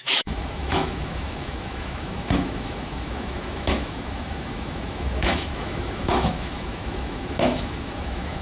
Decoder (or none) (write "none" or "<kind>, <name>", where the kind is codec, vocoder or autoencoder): autoencoder, DAC-VAE